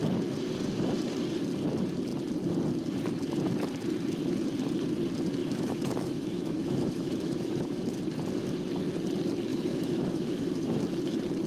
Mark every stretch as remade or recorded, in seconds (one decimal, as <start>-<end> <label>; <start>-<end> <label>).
0.0-5.4 recorded; 5.4-8.0 remade; 8.0-9.5 recorded; 9.5-10.8 remade; 10.8-11.5 recorded

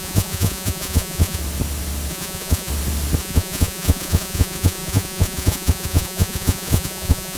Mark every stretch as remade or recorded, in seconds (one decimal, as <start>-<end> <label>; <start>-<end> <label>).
0.0-1.4 remade; 1.4-2.1 recorded; 2.1-2.7 remade; 2.7-3.2 recorded; 3.2-7.4 remade

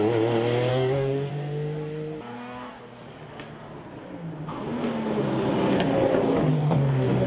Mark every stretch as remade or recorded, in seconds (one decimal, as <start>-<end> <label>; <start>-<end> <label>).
0.0-0.7 recorded; 0.7-1.3 remade; 1.3-2.3 recorded; 2.3-2.8 remade; 2.8-6.5 recorded; 6.5-7.3 remade

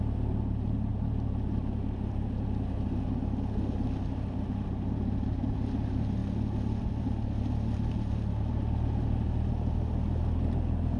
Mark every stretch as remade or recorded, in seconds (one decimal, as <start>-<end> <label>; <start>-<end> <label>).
0.0-11.0 recorded

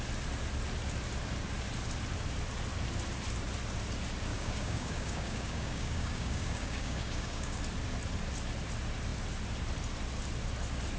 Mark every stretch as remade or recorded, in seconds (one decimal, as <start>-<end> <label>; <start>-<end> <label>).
0.0-4.3 recorded; 4.3-7.6 remade; 7.6-11.0 recorded

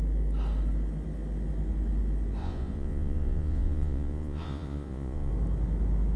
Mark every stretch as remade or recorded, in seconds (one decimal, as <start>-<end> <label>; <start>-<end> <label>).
0.0-2.4 recorded; 2.4-5.3 remade; 5.3-6.2 recorded